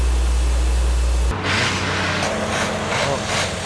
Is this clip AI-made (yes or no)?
no